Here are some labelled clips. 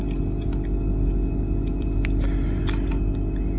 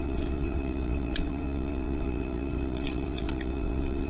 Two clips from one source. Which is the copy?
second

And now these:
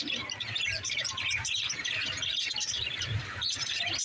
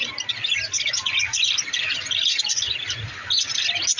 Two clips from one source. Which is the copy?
first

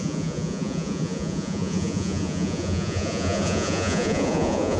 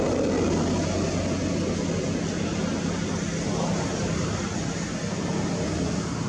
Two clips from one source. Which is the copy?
first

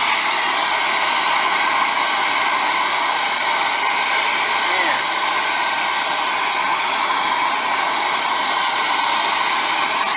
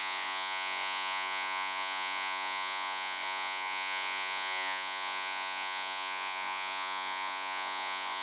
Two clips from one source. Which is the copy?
second